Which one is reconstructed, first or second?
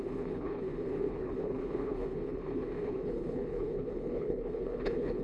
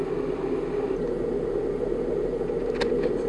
first